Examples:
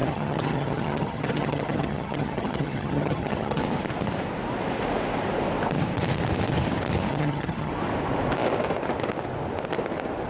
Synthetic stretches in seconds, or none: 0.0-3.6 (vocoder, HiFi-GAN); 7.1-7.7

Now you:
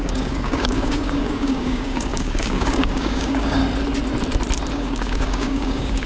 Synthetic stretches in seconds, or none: 0.0-3.6 (codec, DAC); 4.7-6.1

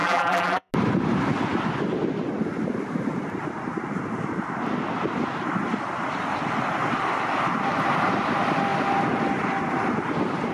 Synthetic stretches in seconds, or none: 0.0-0.7 (vocoder, BigVGAN v2)

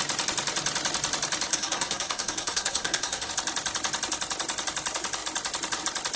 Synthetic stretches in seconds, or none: 1.5-3.3 (codec, SNAC)

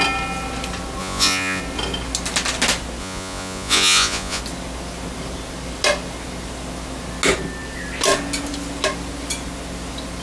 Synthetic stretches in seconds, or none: 1.0-1.6 (vocoder, Vocos); 3.0-4.4

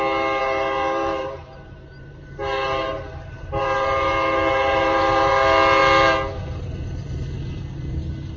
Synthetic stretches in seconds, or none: 0.4-5.3 (vocoder, BigVGAN v2)

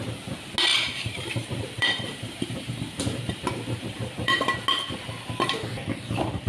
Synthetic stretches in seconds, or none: 0.7-4.6 (vocoder, BigVGAN v2)